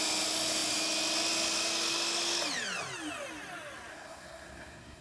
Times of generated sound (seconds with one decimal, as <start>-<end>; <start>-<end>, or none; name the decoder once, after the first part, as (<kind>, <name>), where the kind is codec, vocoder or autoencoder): 3.9-5.0 (codec, SNAC)